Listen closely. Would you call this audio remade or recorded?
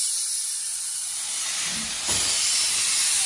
recorded